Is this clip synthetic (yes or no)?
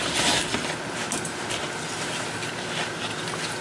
no